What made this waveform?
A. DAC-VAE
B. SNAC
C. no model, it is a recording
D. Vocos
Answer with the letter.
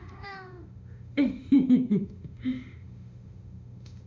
A